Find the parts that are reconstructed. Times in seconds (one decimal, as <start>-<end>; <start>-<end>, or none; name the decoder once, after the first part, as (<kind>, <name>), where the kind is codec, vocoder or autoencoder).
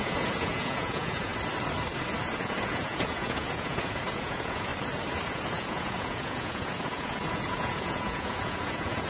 0.0-1.3 (vocoder, Vocos); 2.4-4.7; 5.3-9.1